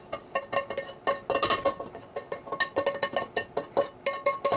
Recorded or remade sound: recorded